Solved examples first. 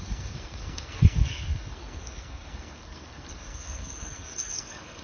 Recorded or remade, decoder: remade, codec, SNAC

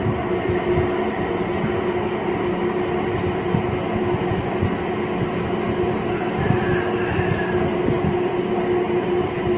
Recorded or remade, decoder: recorded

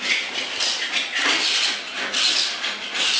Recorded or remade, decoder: recorded